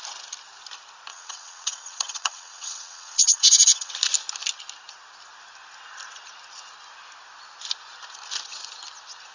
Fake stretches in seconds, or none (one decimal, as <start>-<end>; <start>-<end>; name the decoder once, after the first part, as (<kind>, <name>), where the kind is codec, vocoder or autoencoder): 1.1-3.9 (vocoder, WaveNeXt)